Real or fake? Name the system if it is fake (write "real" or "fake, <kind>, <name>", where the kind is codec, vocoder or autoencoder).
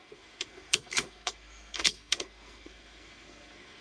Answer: fake, codec, SNAC